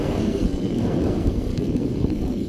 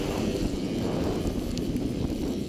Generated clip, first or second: first